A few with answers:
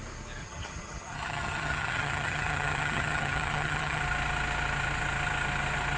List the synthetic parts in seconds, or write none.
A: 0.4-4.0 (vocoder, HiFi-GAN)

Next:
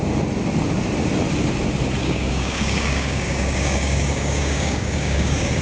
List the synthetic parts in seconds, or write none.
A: 2.0-5.6 (codec, DAC)

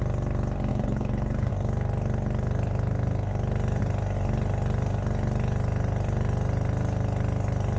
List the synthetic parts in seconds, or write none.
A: 0.7-1.5 (codec, HILCodec)

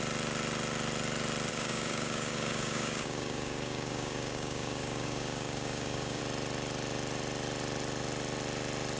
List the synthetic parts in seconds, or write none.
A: 1.5-6.2 (codec, DAC)

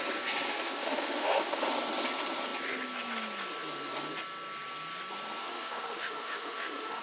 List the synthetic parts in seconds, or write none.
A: 0.5-1.6 (autoencoder, DAC-VAE); 5.4-7.0